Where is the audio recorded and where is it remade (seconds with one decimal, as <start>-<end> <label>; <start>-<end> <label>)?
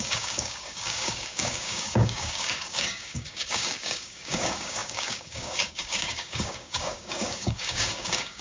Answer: 0.0-8.4 remade